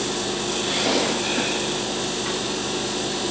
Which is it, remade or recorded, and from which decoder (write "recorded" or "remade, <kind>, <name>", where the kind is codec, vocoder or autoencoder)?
recorded